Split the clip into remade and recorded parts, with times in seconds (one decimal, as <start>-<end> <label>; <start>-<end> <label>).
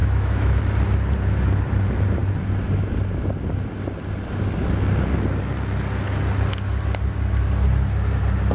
0.0-0.6 remade; 0.6-8.5 recorded